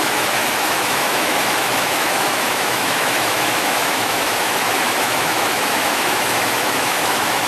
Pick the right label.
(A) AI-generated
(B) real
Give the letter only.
A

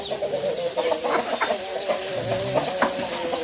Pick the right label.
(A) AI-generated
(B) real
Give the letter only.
B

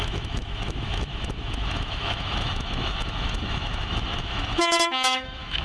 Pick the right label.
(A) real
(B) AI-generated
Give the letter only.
B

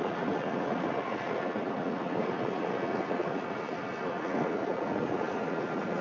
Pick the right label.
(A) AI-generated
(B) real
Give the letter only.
A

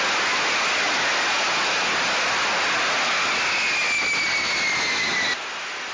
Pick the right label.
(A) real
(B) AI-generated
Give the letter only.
A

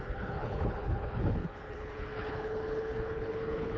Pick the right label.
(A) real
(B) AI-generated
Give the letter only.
B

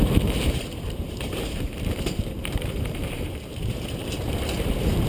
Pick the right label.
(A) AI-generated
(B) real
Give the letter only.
A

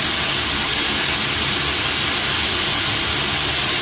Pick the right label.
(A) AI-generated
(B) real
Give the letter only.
B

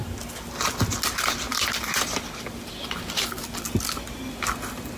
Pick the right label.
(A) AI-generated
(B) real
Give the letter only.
B